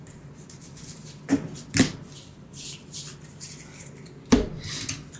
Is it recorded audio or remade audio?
recorded